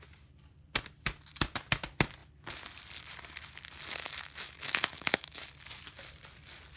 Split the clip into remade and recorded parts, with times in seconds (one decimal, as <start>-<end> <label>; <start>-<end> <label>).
0.0-4.0 recorded; 4.0-5.5 remade; 5.5-6.8 recorded